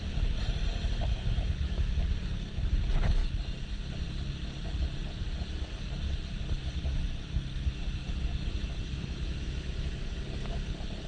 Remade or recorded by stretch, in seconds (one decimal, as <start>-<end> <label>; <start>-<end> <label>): 0.0-1.1 recorded; 1.1-1.9 remade; 1.9-8.0 recorded; 8.0-10.2 remade; 10.2-11.1 recorded